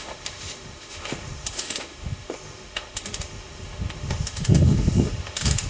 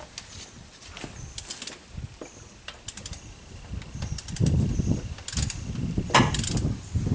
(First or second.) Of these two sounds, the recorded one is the second